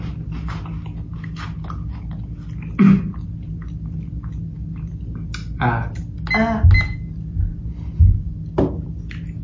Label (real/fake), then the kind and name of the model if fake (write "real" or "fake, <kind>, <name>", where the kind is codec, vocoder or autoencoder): real